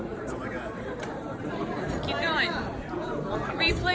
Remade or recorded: remade